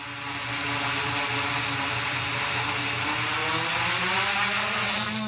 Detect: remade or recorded recorded